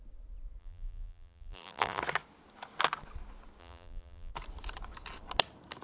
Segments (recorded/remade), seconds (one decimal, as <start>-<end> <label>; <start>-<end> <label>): 0.0-0.6 recorded; 0.6-2.0 remade; 2.0-3.6 recorded; 3.6-4.3 remade; 4.3-5.8 recorded

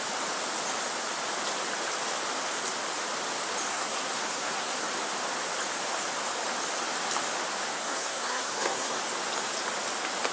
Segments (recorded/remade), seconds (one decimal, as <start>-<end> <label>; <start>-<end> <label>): 0.0-3.7 recorded; 3.7-4.9 remade; 4.9-7.7 recorded; 7.7-9.0 remade; 9.0-10.3 recorded

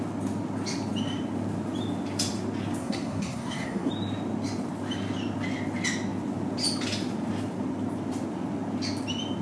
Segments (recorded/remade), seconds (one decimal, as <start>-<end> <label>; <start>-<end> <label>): 0.0-2.8 recorded; 2.8-3.9 remade; 3.9-9.4 recorded